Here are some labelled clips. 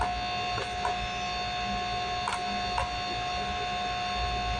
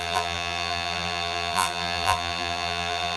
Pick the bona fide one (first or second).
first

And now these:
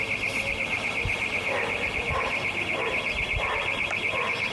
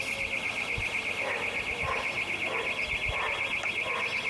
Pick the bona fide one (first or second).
second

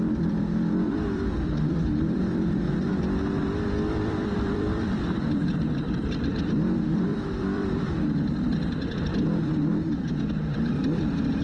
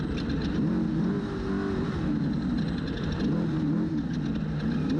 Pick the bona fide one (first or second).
second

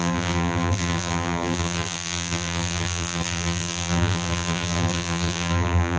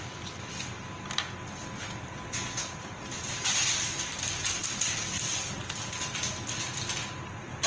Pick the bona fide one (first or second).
second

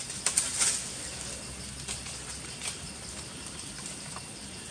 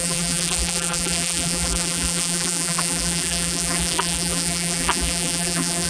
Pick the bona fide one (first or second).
first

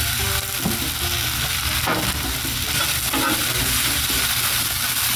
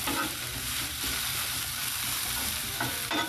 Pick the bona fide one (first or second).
first